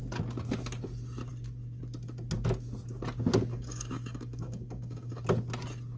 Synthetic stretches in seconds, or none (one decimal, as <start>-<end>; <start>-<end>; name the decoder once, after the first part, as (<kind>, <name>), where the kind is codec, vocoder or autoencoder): 3.5-5.2 (codec, DAC)